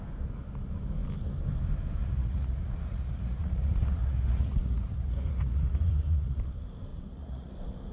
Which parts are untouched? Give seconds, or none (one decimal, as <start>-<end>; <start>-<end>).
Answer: 0.0-2.0; 6.4-6.9; 7.5-7.9